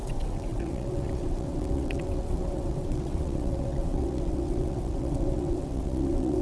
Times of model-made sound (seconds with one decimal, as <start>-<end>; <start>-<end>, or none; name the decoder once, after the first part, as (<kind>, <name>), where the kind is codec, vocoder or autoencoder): 0.0-6.4 (vocoder, WaveNeXt)